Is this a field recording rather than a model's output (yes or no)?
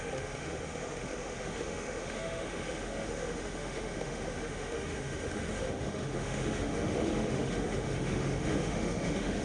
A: no